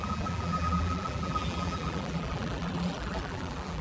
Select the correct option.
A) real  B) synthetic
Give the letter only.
B